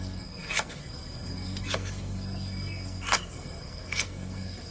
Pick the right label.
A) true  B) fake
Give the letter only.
B